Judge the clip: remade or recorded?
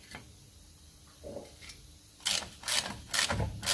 recorded